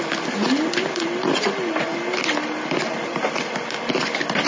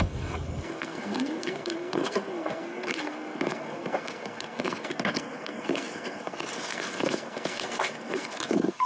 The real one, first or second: first